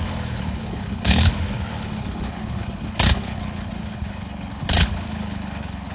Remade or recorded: remade